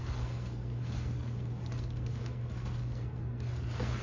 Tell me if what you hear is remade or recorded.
remade